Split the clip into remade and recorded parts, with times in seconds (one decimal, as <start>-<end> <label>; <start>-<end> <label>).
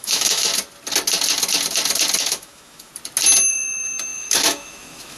0.0-0.5 remade; 0.5-2.2 recorded; 2.2-2.9 remade; 2.9-3.5 recorded; 3.5-5.2 remade